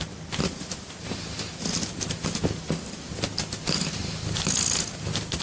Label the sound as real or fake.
real